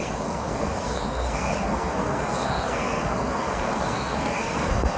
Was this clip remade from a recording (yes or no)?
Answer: yes